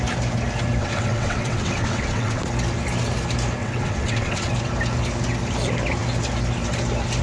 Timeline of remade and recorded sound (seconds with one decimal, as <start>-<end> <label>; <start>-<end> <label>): 0.0-0.8 recorded; 0.8-2.4 remade; 2.4-3.6 recorded; 3.6-4.5 remade; 4.5-7.2 recorded